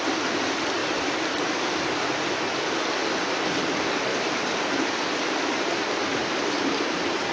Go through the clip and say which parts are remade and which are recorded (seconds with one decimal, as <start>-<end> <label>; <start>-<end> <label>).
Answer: 0.0-0.8 recorded; 0.8-2.6 remade; 2.6-4.1 recorded; 4.1-4.9 remade; 4.9-6.2 recorded; 6.2-7.3 remade